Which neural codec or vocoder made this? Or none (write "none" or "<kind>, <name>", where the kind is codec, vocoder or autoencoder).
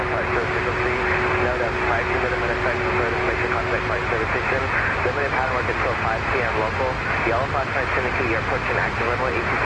none